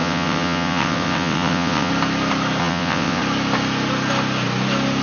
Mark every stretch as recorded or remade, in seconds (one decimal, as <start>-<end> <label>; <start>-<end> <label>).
0.0-1.9 remade; 1.9-2.6 recorded; 2.6-3.2 remade; 3.2-5.0 recorded